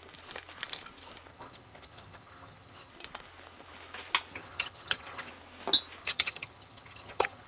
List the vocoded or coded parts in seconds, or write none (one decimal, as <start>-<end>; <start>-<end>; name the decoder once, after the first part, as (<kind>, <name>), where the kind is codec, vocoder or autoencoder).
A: 1.3-2.9 (vocoder, HiFi-GAN); 4.3-5.3; 6.0-7.5